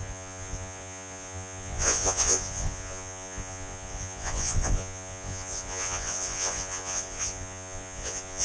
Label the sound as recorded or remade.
remade